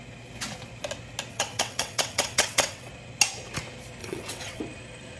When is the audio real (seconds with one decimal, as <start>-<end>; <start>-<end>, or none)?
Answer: 0.0-1.3; 2.9-4.0; 4.6-5.2